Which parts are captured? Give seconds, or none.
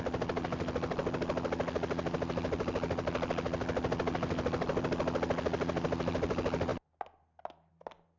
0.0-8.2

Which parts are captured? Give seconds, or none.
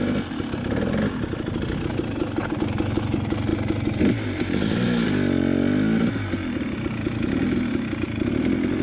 0.0-8.8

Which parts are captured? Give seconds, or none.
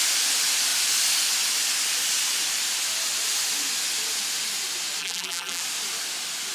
0.0-5.0; 5.6-6.5